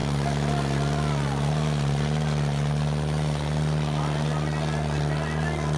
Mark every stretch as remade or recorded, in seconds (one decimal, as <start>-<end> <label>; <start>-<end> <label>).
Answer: 0.0-5.8 recorded